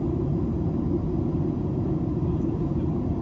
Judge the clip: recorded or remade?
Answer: remade